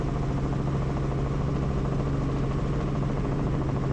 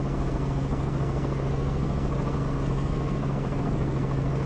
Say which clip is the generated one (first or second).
second